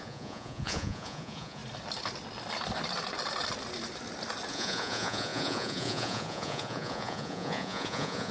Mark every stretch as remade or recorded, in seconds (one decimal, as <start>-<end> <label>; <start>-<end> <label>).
0.0-1.6 remade; 1.6-4.5 recorded; 4.5-8.3 remade

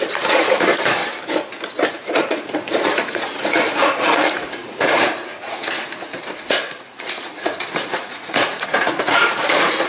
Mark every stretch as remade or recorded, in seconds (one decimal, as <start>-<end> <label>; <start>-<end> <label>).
0.0-1.0 remade; 1.0-1.9 recorded; 1.9-9.9 remade

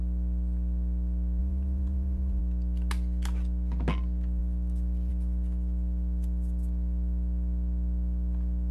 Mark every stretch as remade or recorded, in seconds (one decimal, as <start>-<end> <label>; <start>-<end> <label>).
0.0-1.4 recorded; 1.4-2.4 remade; 2.4-8.7 recorded

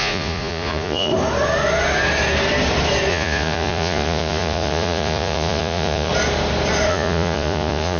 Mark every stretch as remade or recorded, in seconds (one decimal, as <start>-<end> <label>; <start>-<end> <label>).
0.0-1.1 remade; 1.1-3.1 recorded; 3.1-6.1 remade; 6.1-6.9 recorded; 6.9-8.0 remade

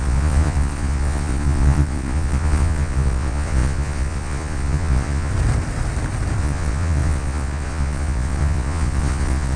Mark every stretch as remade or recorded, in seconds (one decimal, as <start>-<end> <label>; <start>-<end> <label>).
0.0-5.3 remade; 5.3-6.4 recorded; 6.4-9.6 remade

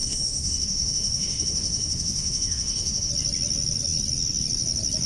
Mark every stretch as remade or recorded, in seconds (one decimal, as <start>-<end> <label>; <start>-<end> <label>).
0.0-3.1 remade; 3.1-5.1 recorded

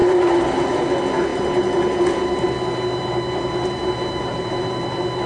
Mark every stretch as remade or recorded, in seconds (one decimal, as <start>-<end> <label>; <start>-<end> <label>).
0.0-5.3 recorded